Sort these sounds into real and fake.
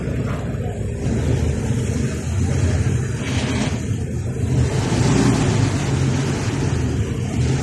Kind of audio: real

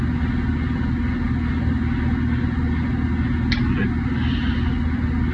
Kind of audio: real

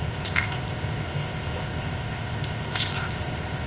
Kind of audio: fake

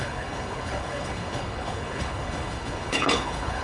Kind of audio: fake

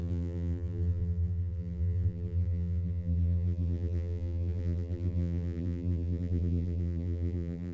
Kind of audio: fake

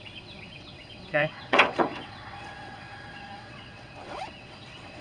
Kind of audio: fake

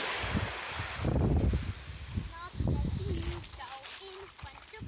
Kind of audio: real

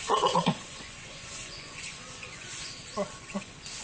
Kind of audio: fake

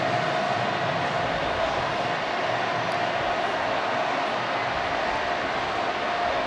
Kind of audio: real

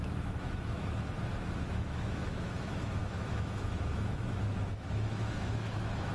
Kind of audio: fake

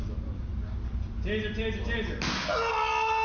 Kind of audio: real